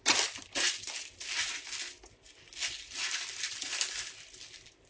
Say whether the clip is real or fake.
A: real